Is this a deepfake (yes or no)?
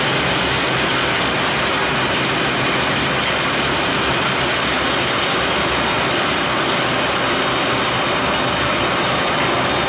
no